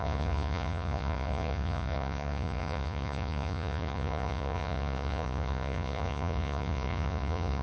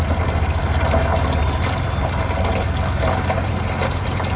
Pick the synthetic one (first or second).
first